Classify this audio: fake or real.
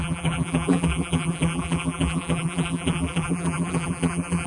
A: fake